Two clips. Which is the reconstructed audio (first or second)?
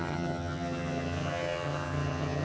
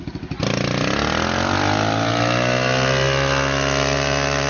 first